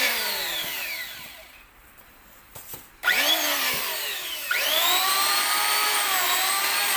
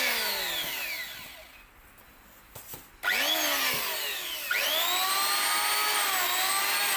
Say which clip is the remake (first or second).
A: first